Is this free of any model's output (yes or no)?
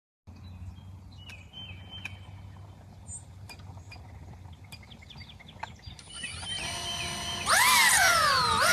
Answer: yes